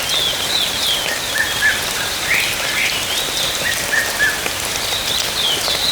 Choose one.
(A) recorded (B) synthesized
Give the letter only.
A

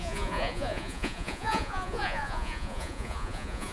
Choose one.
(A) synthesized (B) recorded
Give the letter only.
A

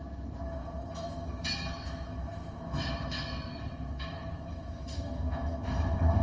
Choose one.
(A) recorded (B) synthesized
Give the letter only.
B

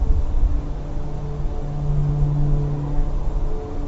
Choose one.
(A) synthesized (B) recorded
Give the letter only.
B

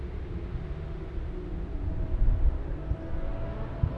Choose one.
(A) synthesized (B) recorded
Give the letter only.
B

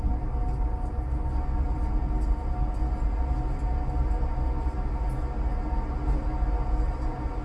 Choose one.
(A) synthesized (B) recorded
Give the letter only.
B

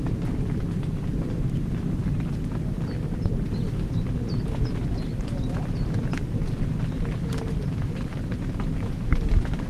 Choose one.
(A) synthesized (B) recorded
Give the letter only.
B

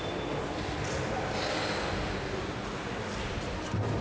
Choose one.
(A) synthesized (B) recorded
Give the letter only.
B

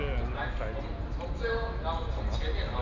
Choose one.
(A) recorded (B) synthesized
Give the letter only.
A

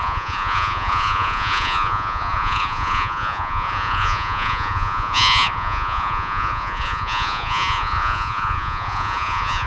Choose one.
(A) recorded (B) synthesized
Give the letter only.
B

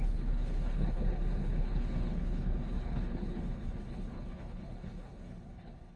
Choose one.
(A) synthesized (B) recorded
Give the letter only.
A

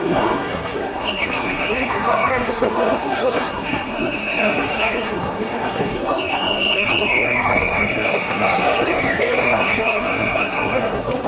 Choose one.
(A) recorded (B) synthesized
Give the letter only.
B